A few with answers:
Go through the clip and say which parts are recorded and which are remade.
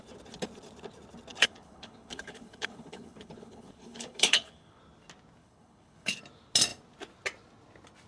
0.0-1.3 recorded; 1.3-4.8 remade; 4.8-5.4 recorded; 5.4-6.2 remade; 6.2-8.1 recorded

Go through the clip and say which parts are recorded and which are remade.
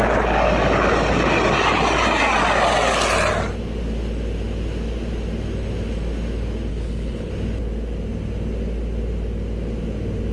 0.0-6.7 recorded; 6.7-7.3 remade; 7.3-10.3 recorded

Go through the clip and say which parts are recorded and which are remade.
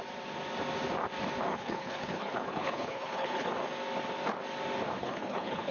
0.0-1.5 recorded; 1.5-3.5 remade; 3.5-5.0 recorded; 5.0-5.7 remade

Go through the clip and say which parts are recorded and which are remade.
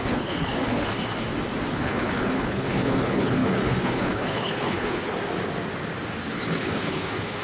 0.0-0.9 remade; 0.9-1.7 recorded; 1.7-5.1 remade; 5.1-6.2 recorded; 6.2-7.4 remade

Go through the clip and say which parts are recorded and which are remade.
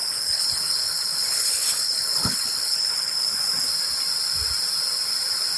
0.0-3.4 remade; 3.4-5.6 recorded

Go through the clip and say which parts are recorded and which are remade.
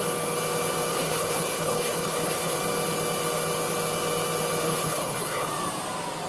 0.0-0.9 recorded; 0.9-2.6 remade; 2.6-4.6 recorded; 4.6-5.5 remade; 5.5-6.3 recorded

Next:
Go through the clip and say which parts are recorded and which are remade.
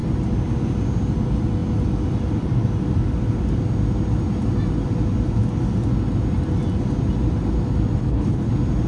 0.0-8.0 recorded; 8.0-8.5 remade; 8.5-8.9 recorded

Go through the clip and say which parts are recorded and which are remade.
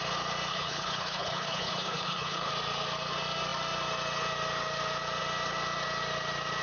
0.0-0.5 recorded; 0.5-2.5 remade; 2.5-6.6 recorded